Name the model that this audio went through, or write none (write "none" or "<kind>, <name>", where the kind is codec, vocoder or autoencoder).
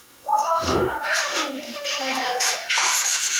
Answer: autoencoder, DAC-VAE